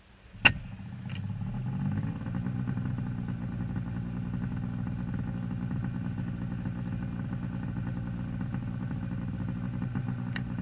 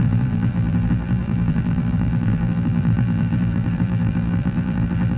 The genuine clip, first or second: first